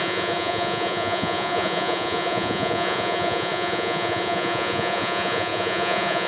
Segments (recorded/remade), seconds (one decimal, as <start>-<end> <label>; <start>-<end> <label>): 0.0-6.3 remade

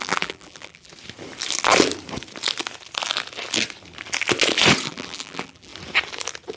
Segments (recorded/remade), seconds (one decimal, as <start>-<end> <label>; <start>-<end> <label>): 0.0-0.9 remade; 0.9-4.9 recorded; 4.9-5.7 remade; 5.7-6.6 recorded